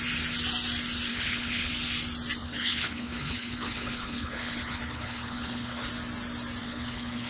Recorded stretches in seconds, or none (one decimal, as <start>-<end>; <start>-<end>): 0.0-1.1; 1.7-2.4; 5.9-6.6